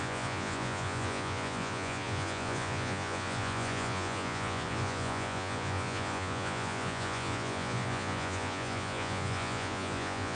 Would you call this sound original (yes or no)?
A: no